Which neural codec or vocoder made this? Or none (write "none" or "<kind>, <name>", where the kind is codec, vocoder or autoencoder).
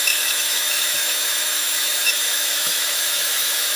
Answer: autoencoder, DAC-VAE